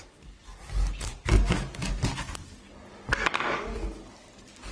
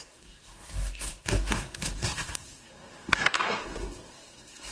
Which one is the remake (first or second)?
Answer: second